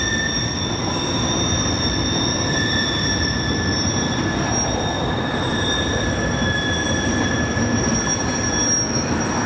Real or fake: real